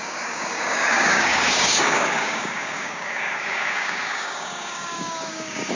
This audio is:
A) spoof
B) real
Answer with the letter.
A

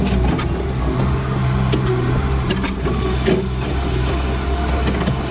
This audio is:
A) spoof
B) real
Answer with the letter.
B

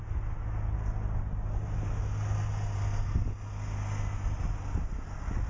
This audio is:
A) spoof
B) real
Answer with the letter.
B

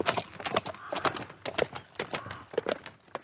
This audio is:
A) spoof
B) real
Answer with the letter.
B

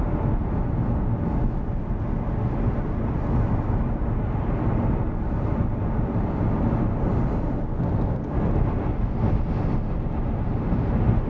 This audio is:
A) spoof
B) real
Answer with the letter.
B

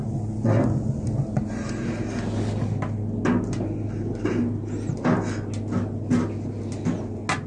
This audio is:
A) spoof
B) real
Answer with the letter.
B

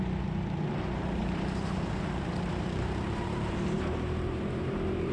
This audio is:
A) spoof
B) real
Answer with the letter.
A